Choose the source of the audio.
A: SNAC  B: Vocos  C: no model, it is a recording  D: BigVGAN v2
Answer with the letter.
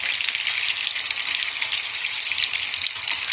C